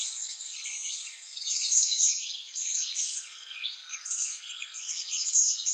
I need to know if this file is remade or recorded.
remade